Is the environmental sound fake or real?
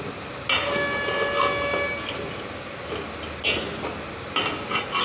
real